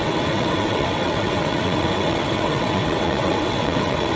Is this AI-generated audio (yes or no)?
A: yes